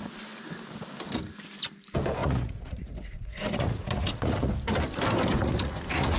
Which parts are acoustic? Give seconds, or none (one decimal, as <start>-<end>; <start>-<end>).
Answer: 0.0-2.2; 4.5-5.4